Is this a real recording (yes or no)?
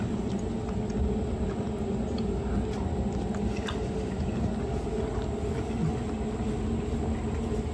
yes